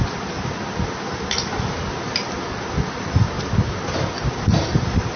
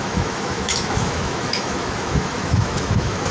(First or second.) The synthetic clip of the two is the second